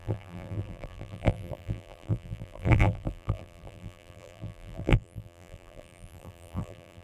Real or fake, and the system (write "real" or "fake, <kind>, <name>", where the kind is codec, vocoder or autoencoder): fake, vocoder, BigVGAN v2